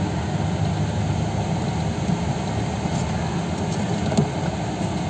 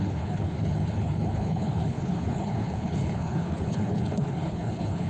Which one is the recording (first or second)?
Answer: first